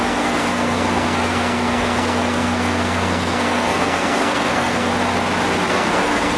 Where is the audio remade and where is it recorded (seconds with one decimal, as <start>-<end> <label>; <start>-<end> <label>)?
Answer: 0.0-4.9 remade; 4.9-5.7 recorded; 5.7-6.4 remade